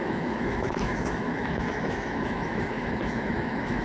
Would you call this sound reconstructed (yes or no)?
yes